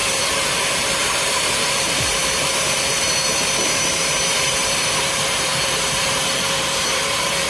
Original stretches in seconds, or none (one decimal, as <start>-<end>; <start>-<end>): none